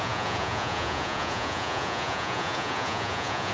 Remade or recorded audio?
remade